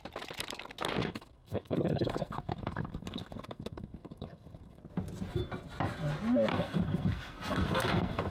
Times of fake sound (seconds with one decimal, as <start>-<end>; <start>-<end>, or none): 1.0-4.8; 6.5-8.3